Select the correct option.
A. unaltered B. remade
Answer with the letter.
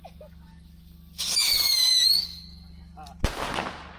A